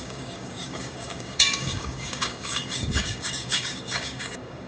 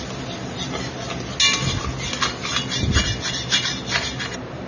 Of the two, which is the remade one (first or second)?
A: first